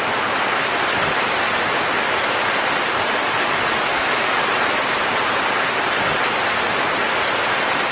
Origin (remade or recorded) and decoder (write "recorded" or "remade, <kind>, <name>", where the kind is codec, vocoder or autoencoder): recorded